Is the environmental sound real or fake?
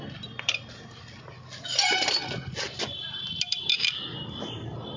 real